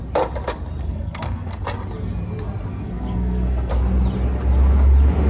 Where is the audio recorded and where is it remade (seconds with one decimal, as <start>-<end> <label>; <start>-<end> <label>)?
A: 0.0-0.8 recorded; 0.8-1.6 remade; 1.6-2.7 recorded; 2.7-3.7 remade; 3.7-5.3 recorded